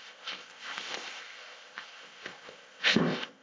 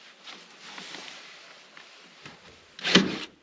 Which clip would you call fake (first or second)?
first